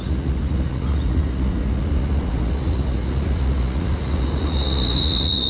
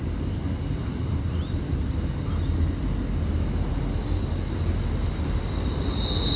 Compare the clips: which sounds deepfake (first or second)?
first